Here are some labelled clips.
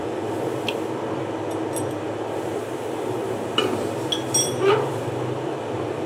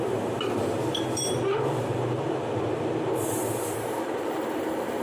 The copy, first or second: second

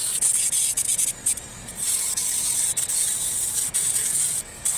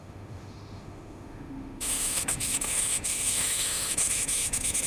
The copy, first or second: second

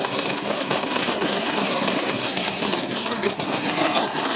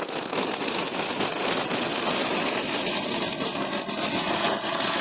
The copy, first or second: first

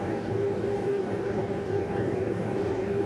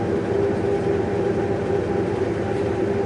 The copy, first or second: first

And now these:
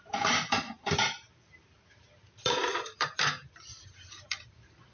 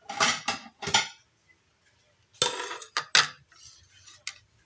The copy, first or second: first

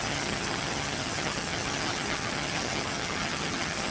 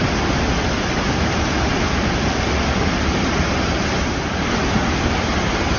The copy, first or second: first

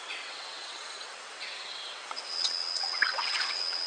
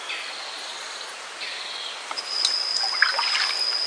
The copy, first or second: first